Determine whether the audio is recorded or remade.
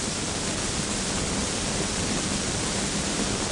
recorded